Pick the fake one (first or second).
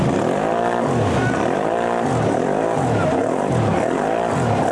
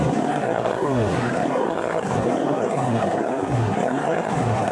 second